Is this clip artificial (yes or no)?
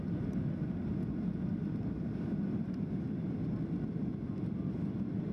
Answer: no